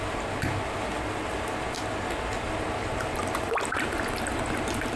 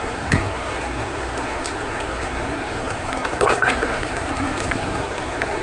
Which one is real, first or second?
first